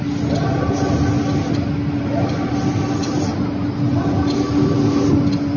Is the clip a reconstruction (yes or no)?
no